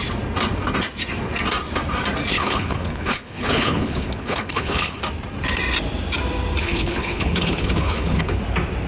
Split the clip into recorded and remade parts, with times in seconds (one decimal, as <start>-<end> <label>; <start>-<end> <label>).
0.0-2.3 recorded; 2.3-5.0 remade; 5.0-6.6 recorded; 6.6-8.4 remade; 8.4-8.9 recorded